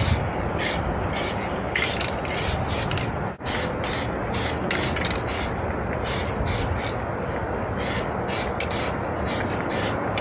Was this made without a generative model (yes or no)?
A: yes